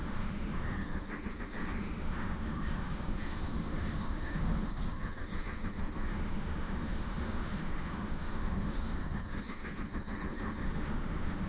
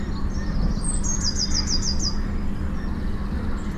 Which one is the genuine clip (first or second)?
second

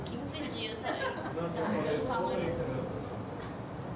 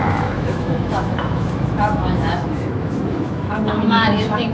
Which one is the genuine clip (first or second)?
first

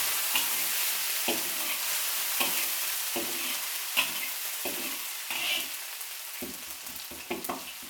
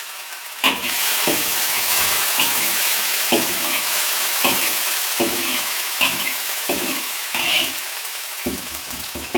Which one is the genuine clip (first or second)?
first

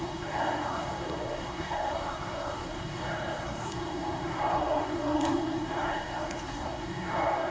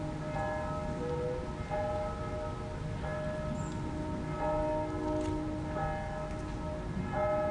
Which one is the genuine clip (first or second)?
second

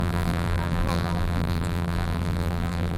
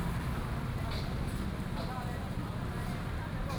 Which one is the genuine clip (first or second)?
second